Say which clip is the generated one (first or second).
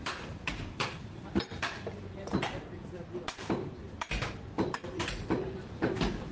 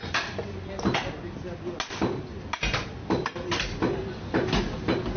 first